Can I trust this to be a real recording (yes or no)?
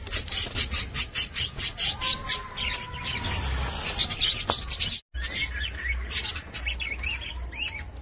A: yes